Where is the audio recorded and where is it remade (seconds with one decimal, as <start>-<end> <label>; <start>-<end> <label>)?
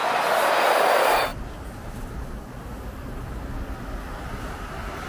0.0-0.6 recorded; 0.6-1.3 remade; 1.3-4.4 recorded; 4.4-5.1 remade